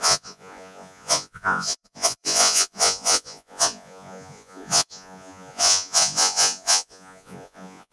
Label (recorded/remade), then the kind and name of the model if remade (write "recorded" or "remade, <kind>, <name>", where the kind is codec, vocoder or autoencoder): remade, vocoder, Vocos